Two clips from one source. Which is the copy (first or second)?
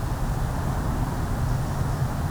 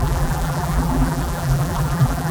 second